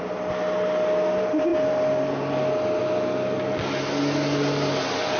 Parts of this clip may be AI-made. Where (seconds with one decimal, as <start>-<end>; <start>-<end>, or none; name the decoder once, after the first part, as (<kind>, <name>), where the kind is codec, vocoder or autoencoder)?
none